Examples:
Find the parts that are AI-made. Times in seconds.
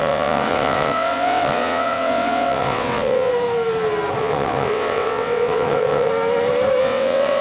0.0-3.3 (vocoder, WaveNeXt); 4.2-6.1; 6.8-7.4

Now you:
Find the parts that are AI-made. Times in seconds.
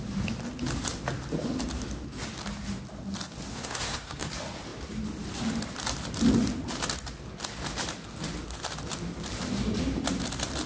3.5-4.3 (codec, SNAC)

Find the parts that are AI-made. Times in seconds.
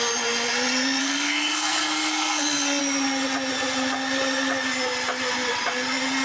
1.0-2.8 (codec, SNAC)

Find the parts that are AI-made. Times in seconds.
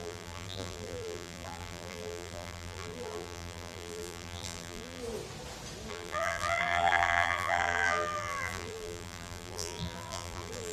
0.0-5.0 (vocoder, BigVGAN v2); 5.9-10.7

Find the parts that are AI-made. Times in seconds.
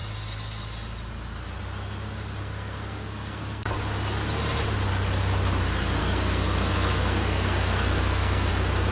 2.4-3.7 (codec, SNAC); 6.0-8.5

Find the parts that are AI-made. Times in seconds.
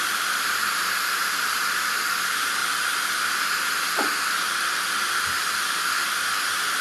0.0-2.6 (vocoder, BigVGAN v2); 3.1-6.8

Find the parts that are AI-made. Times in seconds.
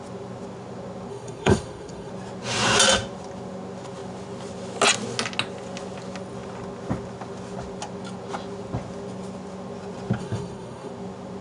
1.1-2.1 (codec, SNAC); 10.2-10.9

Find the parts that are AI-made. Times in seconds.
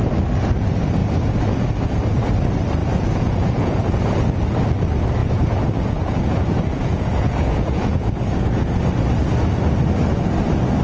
2.8-3.7 (vocoder, Vocos); 5.2-8.8